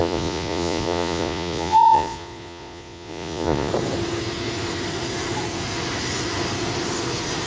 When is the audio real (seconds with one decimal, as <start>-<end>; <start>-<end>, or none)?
3.7-7.5